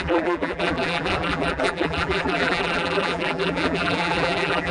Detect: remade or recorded remade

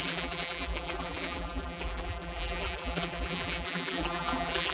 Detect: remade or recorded remade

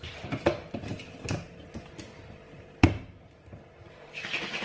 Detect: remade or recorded recorded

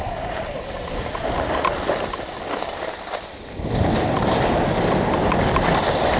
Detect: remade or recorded recorded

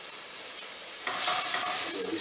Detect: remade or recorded recorded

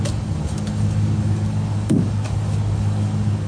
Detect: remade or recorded remade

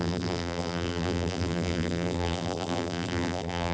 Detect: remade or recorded remade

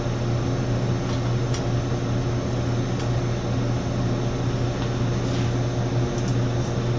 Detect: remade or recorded recorded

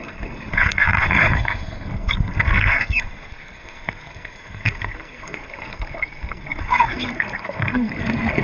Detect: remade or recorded remade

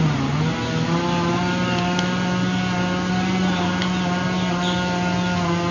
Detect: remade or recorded recorded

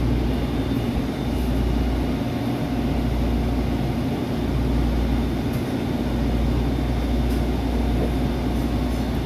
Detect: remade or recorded recorded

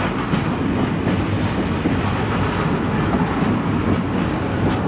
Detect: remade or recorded recorded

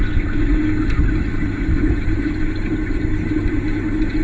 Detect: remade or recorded recorded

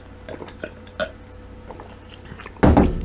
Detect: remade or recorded recorded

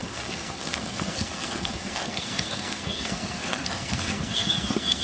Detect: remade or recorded remade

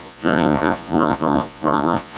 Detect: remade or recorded remade